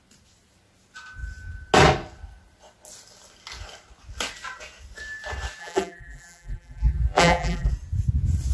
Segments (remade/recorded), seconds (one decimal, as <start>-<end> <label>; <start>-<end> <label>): 0.0-5.6 recorded; 5.6-7.7 remade; 7.7-8.5 recorded